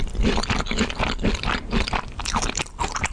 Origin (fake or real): real